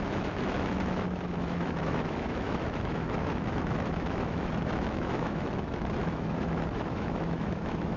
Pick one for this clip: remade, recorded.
remade